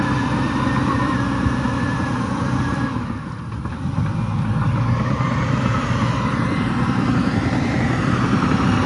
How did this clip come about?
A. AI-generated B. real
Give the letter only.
A